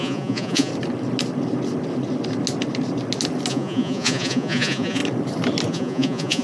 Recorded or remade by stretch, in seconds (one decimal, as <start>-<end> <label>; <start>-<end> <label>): 0.0-0.7 remade; 0.7-3.5 recorded; 3.5-5.0 remade; 5.0-5.7 recorded; 5.7-6.4 remade